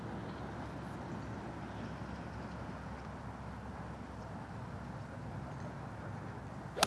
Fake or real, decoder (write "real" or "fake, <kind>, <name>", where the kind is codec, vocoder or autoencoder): real